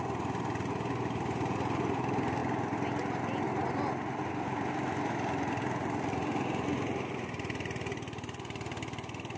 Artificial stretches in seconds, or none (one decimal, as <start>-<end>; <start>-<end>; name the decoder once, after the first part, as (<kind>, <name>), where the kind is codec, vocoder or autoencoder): none